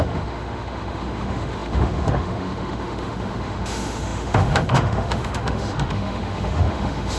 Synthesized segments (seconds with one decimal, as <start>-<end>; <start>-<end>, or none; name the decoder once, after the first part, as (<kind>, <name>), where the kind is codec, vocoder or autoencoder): 0.0-7.2 (autoencoder, DAC-VAE)